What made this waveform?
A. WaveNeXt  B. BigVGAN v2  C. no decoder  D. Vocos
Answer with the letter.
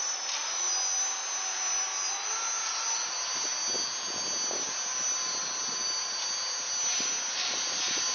C